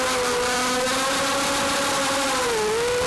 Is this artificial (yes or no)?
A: no